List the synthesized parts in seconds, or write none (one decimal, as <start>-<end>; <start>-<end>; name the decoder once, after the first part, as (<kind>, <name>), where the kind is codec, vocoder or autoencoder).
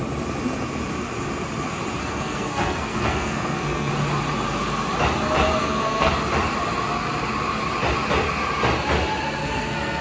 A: 2.0-3.9 (codec, SNAC); 5.6-6.1; 9.4-10.0